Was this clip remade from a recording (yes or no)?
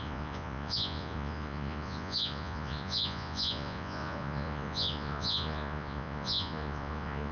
yes